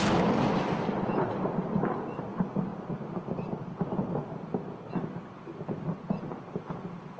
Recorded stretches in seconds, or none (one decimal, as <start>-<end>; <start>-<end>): 0.0-7.2